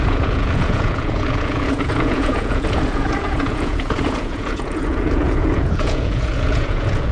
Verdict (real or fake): fake